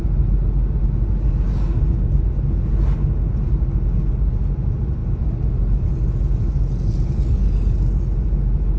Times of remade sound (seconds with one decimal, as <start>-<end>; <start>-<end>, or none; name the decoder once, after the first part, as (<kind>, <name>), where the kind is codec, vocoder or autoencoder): none